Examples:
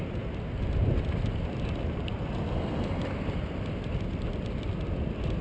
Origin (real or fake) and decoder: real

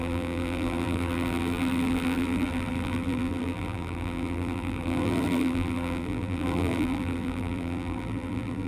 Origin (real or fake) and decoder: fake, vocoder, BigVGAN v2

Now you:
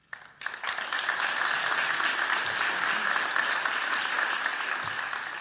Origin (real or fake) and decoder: real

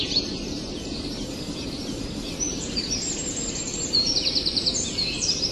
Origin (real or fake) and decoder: fake, vocoder, BigVGAN v2